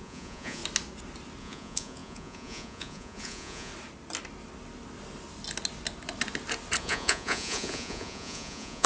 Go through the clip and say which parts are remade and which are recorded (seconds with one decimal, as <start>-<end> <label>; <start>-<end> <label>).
0.0-0.6 remade; 0.6-1.4 recorded; 1.4-3.7 remade; 3.7-6.8 recorded; 6.8-8.9 remade